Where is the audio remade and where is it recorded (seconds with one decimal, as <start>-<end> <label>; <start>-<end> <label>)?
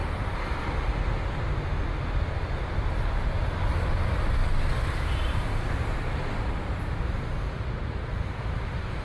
0.0-0.9 remade; 0.9-4.4 recorded; 4.4-9.0 remade